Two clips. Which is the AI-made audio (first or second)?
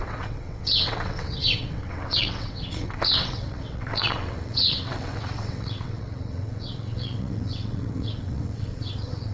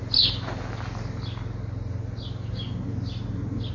first